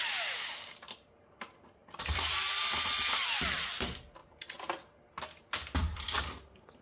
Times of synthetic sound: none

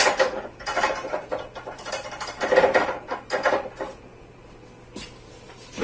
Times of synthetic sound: none

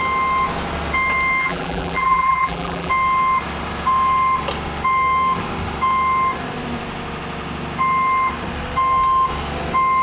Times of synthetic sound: 1.4-2.9